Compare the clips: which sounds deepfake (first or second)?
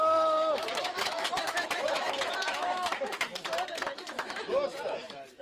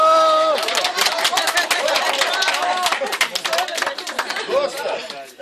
first